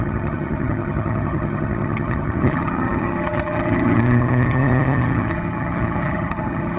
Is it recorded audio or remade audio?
remade